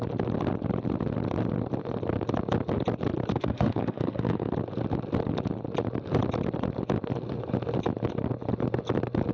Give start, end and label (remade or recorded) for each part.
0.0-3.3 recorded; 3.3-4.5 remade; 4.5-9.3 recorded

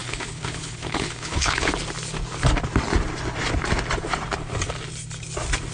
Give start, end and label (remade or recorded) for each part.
0.0-1.7 remade; 1.7-5.7 recorded

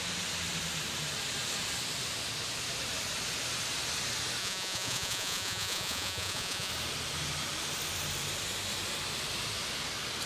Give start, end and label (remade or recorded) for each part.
0.0-4.4 recorded; 4.4-6.7 remade; 6.7-10.3 recorded

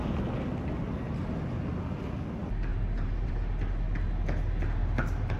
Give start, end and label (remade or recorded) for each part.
0.0-2.7 recorded; 2.7-3.4 remade; 3.4-4.8 recorded; 4.8-5.4 remade

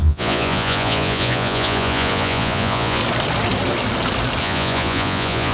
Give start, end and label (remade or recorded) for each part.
0.0-3.0 remade; 3.0-4.4 recorded; 4.4-5.5 remade

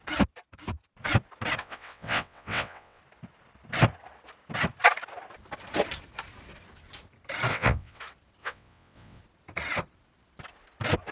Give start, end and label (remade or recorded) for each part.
0.0-1.6 recorded; 1.6-3.0 remade; 3.0-7.5 recorded; 7.5-8.0 remade; 8.0-8.4 recorded; 8.4-9.2 remade; 9.2-11.1 recorded